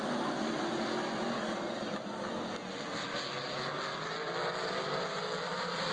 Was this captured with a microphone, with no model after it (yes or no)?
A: yes